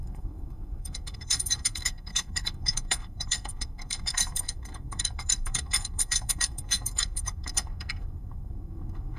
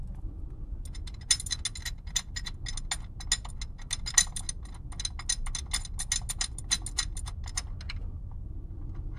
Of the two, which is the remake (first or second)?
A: first